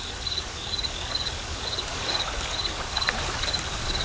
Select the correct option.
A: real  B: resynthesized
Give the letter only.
B